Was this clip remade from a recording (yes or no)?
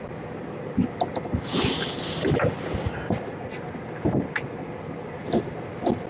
no